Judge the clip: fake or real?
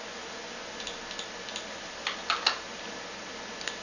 real